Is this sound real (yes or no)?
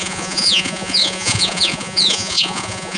no